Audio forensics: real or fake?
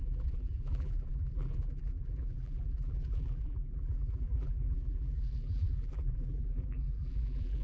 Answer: fake